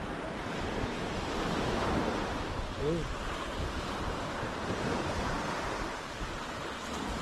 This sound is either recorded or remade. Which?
recorded